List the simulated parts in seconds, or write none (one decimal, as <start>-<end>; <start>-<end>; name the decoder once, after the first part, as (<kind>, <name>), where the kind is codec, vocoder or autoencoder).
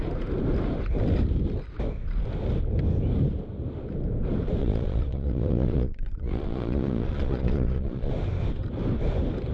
4.6-8.1 (vocoder, Vocos)